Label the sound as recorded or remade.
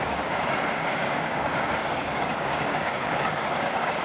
remade